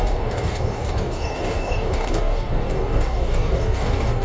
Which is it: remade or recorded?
remade